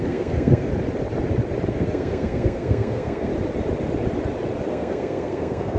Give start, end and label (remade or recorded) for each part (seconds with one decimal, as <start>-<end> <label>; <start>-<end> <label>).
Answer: 0.0-0.7 remade; 0.7-1.7 recorded; 1.7-3.3 remade; 3.3-4.7 recorded; 4.7-5.8 remade